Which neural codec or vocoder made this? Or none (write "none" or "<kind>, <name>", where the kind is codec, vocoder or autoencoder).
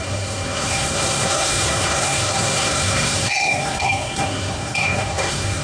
codec, SNAC